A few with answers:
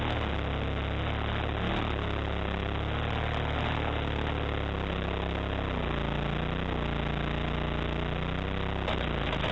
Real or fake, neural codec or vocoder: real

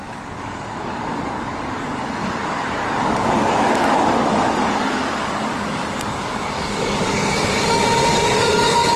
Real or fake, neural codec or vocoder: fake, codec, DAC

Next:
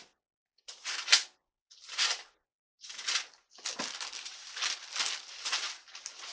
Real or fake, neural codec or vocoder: real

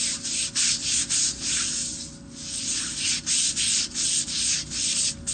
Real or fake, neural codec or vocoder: real